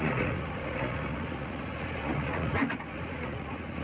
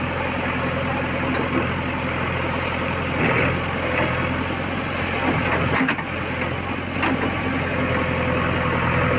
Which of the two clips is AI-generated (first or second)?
first